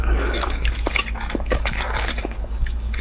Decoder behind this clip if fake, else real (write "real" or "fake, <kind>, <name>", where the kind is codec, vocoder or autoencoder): fake, codec, DAC